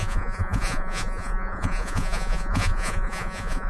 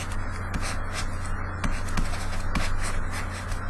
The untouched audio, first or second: second